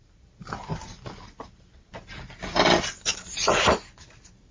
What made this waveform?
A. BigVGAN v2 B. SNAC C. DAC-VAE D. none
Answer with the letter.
A